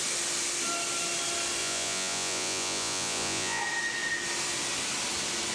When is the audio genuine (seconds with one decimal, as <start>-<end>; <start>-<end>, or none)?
0.0-1.6; 3.6-5.5